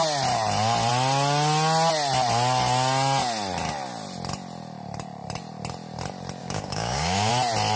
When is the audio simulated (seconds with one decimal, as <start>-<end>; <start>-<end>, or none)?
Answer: 6.4-7.3